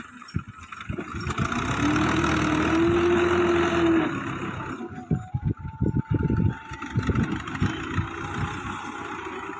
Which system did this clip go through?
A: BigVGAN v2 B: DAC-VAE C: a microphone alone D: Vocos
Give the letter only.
C